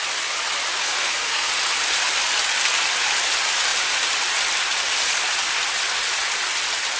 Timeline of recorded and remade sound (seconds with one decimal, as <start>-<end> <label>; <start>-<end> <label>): 0.0-0.8 recorded; 0.8-1.5 remade; 1.5-7.0 recorded